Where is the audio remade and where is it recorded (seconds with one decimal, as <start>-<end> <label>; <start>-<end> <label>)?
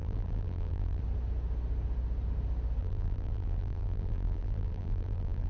0.0-1.0 remade; 1.0-2.8 recorded; 2.8-5.5 remade